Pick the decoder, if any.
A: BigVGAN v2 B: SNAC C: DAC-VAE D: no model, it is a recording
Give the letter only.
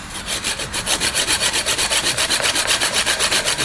A